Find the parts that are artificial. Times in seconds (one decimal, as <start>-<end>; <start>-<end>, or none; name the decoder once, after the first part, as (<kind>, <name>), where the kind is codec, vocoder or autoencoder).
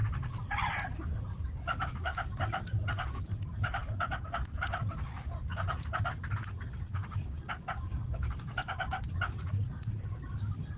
none